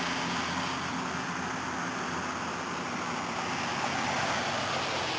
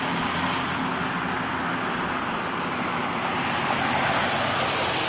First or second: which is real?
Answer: first